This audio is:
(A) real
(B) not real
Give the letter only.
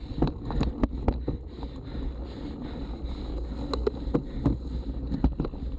A